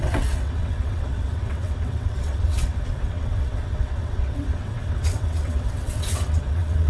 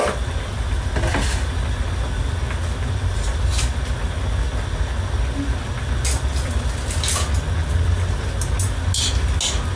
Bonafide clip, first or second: second